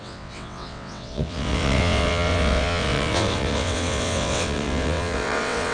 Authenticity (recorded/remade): remade